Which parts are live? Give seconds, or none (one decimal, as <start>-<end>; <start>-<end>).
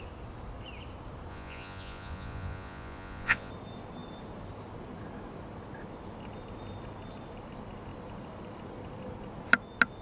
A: 0.0-1.3; 3.5-10.0